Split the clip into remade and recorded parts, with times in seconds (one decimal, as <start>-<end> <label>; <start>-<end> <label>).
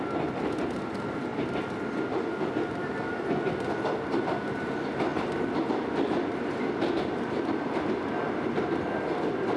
0.0-9.6 recorded